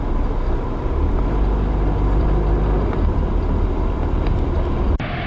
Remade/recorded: recorded